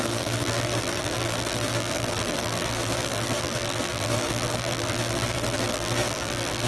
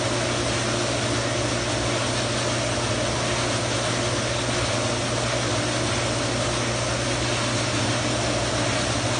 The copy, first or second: first